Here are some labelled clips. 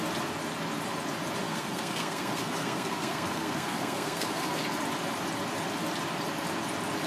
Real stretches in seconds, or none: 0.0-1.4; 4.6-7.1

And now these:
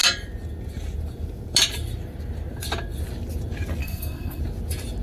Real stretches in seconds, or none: 0.0-3.8; 4.4-5.0

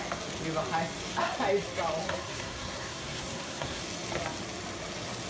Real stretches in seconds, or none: 0.0-2.0; 3.8-5.3

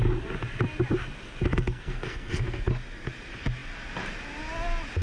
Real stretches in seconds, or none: 0.0-1.5; 2.7-5.0

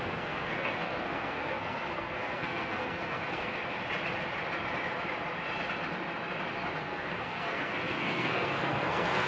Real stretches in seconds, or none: 3.6-6.8

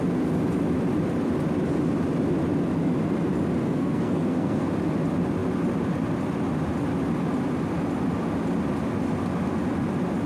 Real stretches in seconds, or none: 0.0-3.6; 4.7-10.3

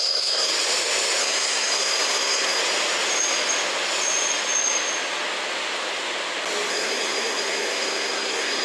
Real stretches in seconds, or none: 0.5-1.2; 2.6-6.7

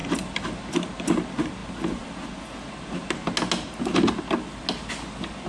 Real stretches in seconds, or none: 0.0-5.5